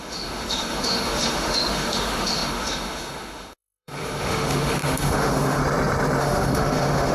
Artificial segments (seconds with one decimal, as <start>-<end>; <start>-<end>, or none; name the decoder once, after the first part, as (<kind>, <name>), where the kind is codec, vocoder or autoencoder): 0.0-5.6 (autoencoder, DAC-VAE); 6.2-7.1

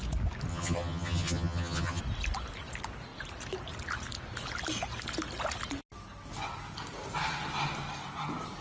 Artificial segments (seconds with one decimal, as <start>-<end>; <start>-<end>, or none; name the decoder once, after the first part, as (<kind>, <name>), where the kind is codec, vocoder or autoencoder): 0.5-2.0 (vocoder, HiFi-GAN)